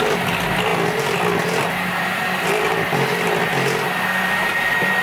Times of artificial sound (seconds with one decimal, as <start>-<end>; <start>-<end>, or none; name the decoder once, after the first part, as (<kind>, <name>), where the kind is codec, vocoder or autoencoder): none